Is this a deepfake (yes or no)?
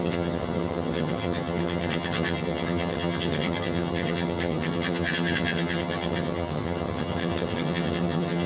yes